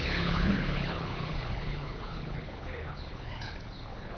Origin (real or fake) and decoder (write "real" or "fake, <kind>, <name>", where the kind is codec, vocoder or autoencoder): fake, codec, HILCodec